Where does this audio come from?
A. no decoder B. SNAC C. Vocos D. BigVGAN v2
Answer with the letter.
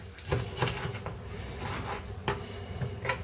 A